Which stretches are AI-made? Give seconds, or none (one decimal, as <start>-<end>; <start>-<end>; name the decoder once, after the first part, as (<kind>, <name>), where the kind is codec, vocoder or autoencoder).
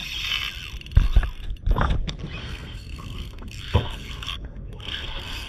2.4-5.5 (codec, SNAC)